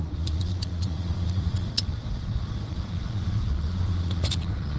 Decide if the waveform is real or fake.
fake